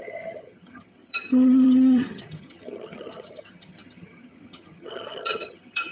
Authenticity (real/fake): fake